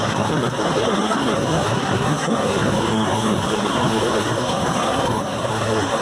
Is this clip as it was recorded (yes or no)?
no